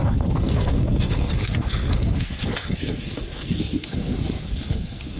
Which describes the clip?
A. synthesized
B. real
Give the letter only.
A